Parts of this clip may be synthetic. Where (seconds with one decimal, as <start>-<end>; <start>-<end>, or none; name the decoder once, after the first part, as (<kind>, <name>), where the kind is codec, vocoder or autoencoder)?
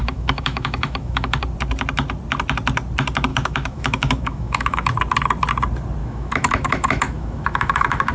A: 0.0-1.4 (autoencoder, DAC-VAE); 3.3-4.9; 6.0-8.1